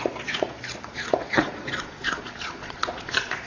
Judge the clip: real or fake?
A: fake